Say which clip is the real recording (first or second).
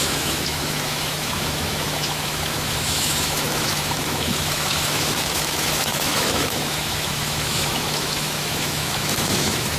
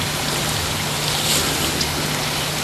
second